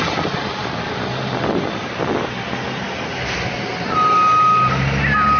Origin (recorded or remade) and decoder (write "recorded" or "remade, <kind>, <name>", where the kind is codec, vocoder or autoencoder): recorded